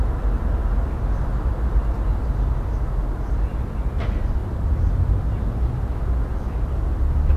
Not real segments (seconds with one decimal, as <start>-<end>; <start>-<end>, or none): none